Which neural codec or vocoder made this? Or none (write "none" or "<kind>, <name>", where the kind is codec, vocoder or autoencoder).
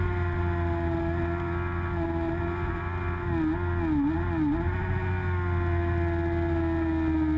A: none